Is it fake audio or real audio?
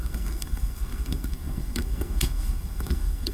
fake